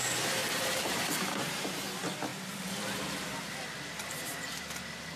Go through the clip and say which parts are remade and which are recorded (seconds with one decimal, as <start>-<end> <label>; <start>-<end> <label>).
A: 0.0-5.2 remade